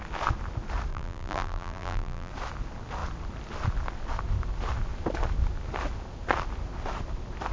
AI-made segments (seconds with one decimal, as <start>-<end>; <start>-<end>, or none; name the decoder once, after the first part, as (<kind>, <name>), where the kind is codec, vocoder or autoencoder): 0.9-2.3 (vocoder, BigVGAN v2)